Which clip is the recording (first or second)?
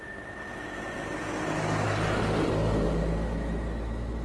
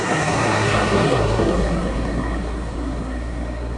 first